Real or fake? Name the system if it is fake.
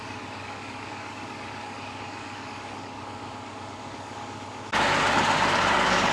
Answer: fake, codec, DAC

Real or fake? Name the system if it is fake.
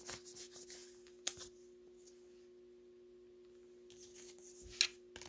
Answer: real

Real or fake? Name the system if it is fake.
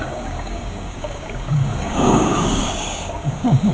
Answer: fake, codec, DAC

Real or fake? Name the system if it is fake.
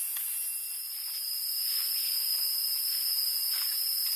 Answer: real